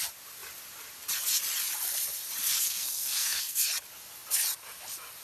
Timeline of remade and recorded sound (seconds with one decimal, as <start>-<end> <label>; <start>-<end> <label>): 0.0-2.4 recorded; 2.4-3.7 remade; 3.7-5.2 recorded